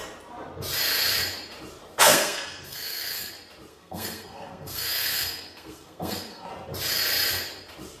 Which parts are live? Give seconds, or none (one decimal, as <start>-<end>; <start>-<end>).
0.0-2.0; 3.3-3.7; 6.5-8.0